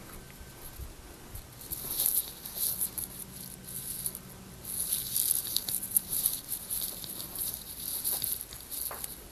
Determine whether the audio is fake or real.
real